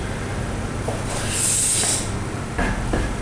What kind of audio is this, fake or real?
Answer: real